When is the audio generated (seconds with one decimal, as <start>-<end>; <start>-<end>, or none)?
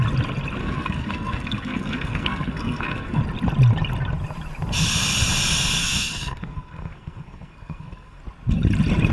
0.6-3.2; 5.8-8.2